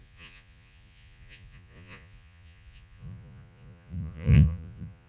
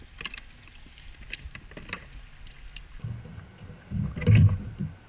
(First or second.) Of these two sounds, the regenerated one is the first